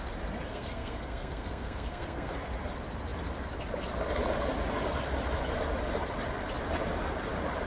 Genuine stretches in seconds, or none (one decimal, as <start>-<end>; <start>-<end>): 0.0-0.5; 2.3-7.7